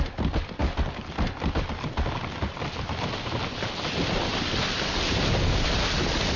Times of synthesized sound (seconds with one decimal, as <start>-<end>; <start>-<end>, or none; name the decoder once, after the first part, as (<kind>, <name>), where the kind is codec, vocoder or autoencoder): none